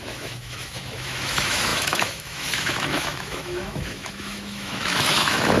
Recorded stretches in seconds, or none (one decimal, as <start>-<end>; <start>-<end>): none